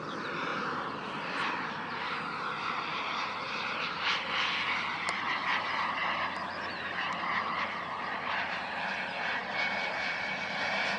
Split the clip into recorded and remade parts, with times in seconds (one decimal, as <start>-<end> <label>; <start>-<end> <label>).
0.0-6.0 remade; 6.0-6.7 recorded; 6.7-11.0 remade